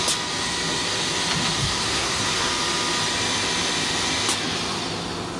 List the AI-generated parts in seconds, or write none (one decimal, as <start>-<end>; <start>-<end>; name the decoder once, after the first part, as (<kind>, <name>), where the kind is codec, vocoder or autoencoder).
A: 1.6-2.5 (codec, SNAC)